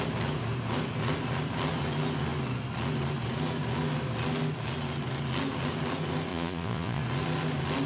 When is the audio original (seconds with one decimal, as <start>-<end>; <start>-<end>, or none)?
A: 0.0-6.3; 7.0-7.9